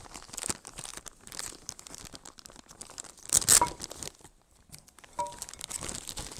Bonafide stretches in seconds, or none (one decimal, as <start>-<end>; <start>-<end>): 0.0-6.4